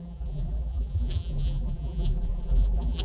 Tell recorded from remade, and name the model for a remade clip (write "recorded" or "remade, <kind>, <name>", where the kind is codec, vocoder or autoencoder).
remade, vocoder, BigVGAN v2